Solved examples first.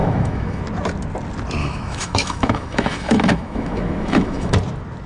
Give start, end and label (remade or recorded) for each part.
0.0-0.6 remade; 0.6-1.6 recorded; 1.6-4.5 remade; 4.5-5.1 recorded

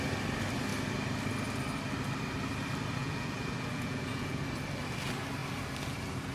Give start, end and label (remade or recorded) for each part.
0.0-3.0 recorded; 3.0-4.4 remade; 4.4-6.3 recorded